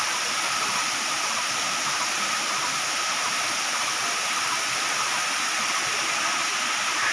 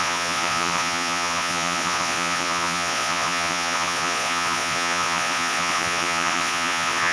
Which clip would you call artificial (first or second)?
second